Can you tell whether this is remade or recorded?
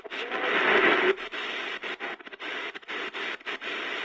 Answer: recorded